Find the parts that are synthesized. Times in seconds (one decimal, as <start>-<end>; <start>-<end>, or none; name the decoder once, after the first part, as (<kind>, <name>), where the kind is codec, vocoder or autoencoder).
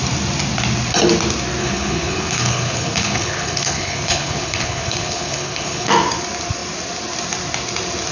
1.6-5.9 (codec, HILCodec)